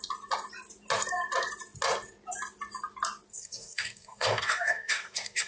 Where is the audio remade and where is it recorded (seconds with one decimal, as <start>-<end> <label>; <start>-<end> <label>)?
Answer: 0.0-3.3 recorded; 3.3-5.5 remade